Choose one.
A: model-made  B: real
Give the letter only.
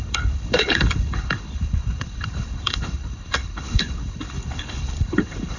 A